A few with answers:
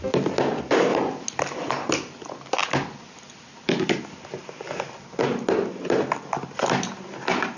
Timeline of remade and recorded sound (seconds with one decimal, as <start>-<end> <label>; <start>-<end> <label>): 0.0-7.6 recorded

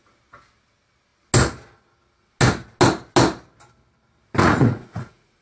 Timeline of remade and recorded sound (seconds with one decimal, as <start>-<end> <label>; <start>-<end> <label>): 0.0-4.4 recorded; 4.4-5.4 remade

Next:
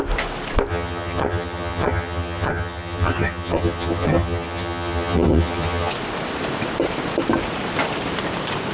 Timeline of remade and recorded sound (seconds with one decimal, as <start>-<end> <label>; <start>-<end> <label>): 0.0-0.7 recorded; 0.7-5.9 remade; 5.9-8.7 recorded